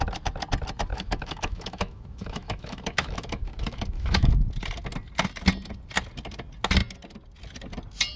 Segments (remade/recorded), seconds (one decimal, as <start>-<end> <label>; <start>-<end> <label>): 0.0-0.9 recorded; 0.9-4.3 remade; 4.3-8.2 recorded